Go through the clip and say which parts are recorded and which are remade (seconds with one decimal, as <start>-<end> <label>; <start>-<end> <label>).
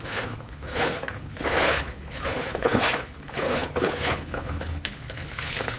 0.0-5.8 remade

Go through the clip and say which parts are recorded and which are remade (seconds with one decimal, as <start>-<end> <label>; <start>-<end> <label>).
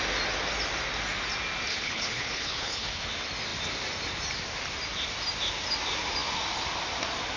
0.0-1.7 recorded; 1.7-3.0 remade; 3.0-7.4 recorded